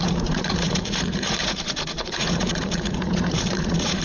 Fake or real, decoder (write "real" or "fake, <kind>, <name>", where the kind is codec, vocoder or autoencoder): fake, vocoder, Vocos